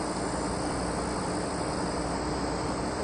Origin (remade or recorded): recorded